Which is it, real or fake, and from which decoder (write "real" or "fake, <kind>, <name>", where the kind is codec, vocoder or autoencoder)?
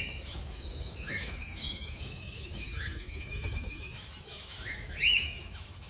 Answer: fake, autoencoder, DAC-VAE